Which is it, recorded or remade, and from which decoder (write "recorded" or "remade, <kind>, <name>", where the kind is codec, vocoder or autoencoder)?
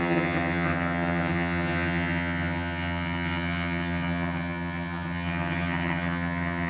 remade, vocoder, HiFi-GAN